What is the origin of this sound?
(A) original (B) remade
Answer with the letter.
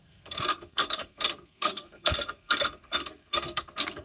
B